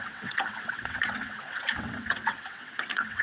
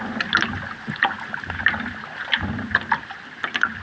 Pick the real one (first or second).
second